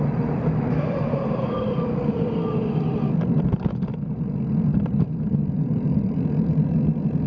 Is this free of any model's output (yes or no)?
yes